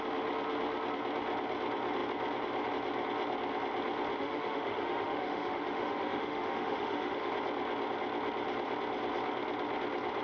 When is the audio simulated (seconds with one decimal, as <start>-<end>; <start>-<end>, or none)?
4.2-7.3